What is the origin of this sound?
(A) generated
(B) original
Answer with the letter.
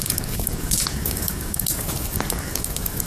A